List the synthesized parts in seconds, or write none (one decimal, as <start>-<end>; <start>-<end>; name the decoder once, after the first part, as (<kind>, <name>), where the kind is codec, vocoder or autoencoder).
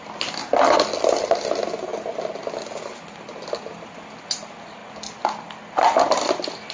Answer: none